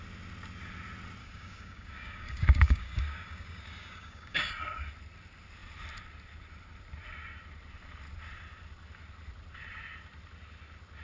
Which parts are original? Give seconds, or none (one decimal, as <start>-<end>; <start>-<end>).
0.0-1.2; 4.5-11.0